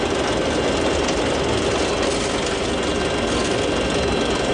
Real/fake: real